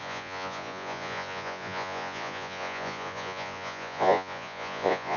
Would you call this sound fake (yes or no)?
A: yes